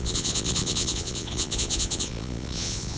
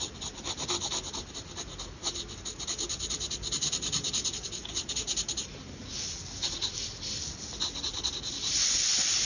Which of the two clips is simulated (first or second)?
first